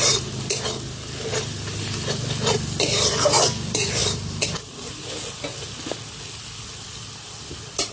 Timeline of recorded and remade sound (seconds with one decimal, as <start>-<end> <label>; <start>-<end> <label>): 0.0-4.0 recorded; 4.0-4.9 remade; 4.9-7.9 recorded